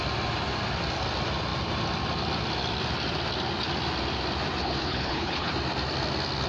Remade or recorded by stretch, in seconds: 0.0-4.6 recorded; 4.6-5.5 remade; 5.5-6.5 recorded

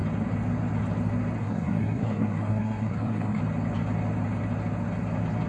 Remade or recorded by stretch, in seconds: 0.0-1.4 recorded; 1.4-3.4 remade; 3.4-5.5 recorded

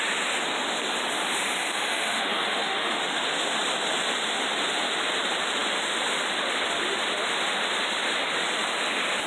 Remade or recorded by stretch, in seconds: 0.0-1.6 recorded; 1.6-3.0 remade; 3.0-9.3 recorded